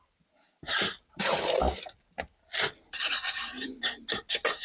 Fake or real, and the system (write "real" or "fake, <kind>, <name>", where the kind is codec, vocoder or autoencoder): real